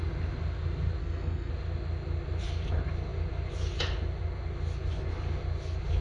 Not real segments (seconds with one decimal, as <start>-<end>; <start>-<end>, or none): 1.0-1.5